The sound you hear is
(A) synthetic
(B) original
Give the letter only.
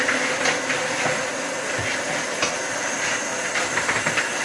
B